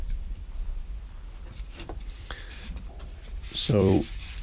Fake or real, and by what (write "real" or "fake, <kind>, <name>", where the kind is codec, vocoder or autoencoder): fake, vocoder, BigVGAN v2